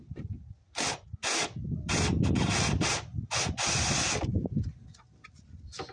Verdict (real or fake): real